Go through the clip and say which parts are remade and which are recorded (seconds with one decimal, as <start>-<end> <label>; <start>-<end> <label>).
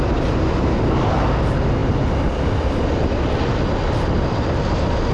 0.0-1.8 recorded; 1.8-5.1 remade